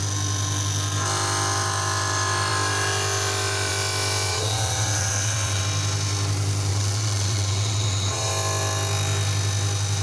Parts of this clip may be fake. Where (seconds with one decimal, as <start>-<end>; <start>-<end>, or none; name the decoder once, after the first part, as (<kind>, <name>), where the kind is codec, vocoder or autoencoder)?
4.3-5.6 (vocoder, WaveNeXt); 6.7-8.3